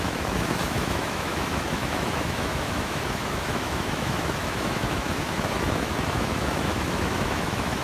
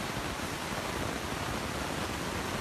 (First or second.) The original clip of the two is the second